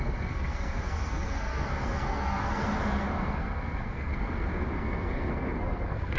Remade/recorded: remade